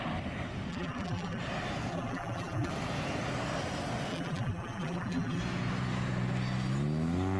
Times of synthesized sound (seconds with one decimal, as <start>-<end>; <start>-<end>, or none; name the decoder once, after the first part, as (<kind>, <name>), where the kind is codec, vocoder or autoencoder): 0.7-1.4 (vocoder, BigVGAN v2); 1.9-2.7; 4.1-5.4